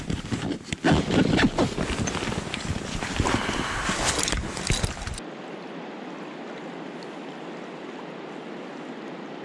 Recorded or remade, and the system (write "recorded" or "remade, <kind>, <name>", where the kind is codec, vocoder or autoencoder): recorded